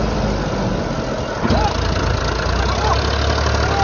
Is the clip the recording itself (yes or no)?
yes